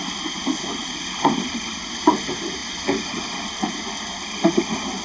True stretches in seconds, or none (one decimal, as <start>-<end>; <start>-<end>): 0.0-5.0